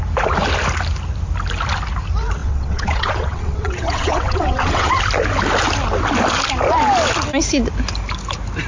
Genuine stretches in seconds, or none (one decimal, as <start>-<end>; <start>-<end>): 0.0-2.4; 5.0-8.7